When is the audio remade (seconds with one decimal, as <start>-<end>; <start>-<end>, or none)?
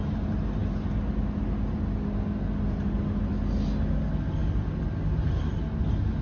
4.4-5.6